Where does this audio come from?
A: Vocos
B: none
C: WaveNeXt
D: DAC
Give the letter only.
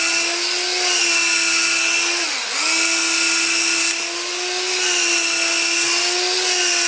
B